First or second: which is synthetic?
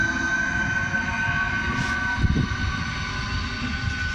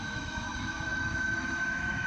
second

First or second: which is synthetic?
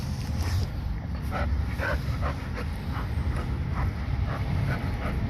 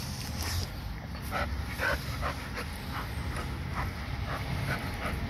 first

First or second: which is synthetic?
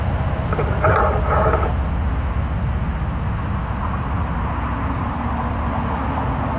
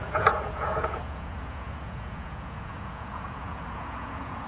second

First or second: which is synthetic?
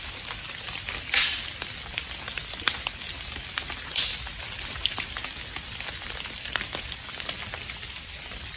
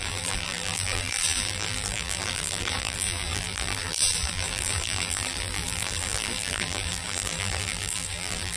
second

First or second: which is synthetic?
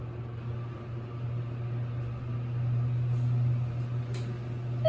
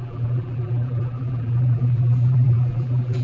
second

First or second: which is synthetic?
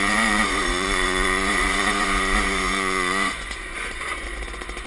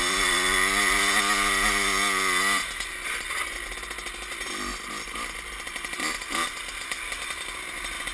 first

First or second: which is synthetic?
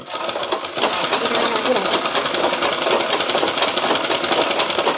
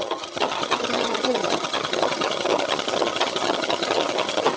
second